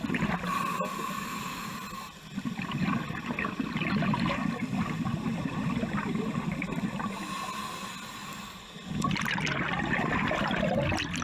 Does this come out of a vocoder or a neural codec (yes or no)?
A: no